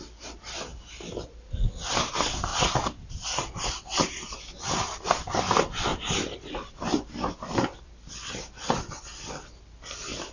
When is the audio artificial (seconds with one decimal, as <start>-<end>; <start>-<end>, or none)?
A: none